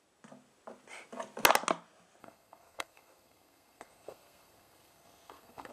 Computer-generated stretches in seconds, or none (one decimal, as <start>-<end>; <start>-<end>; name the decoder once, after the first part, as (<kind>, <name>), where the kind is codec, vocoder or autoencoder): 2.2-5.7 (codec, SNAC)